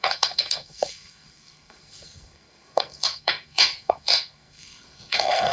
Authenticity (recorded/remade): remade